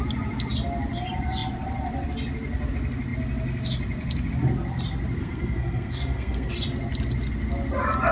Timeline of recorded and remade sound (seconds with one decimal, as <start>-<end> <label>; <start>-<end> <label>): 0.0-5.2 recorded; 5.2-6.5 remade; 6.5-8.1 recorded